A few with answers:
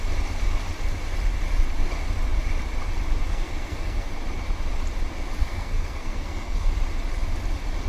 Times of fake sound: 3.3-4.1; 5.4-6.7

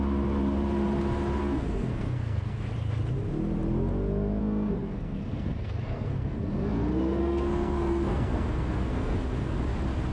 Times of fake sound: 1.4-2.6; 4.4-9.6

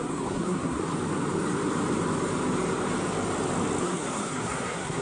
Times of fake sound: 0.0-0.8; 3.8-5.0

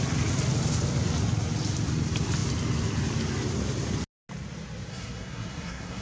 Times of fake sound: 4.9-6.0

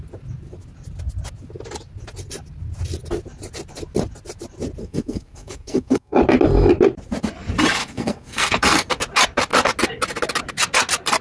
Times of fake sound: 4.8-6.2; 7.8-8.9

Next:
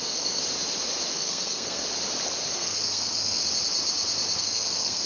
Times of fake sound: 0.0-0.4; 1.1-1.8; 2.5-3.4; 4.4-5.1

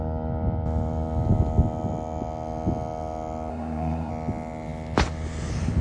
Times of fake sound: 3.5-4.1

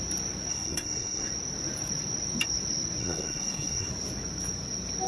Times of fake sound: 0.5-1.3; 3.0-3.9